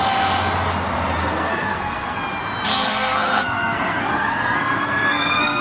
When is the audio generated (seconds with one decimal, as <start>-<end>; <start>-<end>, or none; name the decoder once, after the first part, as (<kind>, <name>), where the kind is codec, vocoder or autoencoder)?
1.2-2.2 (codec, SNAC); 2.7-5.6